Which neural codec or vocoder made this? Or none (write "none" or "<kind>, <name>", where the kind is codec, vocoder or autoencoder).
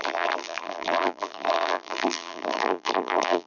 vocoder, BigVGAN v2